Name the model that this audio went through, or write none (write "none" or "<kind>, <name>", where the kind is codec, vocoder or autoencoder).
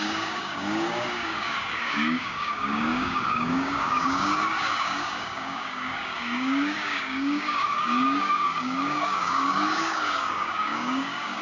codec, DAC